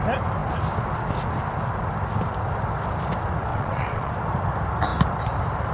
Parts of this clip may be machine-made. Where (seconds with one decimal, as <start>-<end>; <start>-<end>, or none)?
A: 3.5-4.1